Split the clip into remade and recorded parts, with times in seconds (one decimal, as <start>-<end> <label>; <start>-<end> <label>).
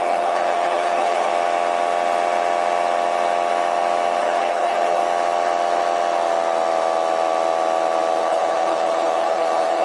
0.0-1.3 remade; 1.3-4.2 recorded; 4.2-5.0 remade; 5.0-8.2 recorded; 8.2-9.8 remade